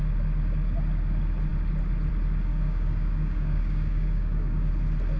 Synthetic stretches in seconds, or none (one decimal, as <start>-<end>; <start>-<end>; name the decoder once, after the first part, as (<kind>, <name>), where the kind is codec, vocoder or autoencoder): 2.5-4.7 (codec, DAC)